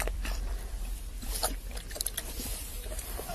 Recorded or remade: remade